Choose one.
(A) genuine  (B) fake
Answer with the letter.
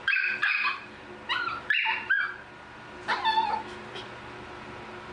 A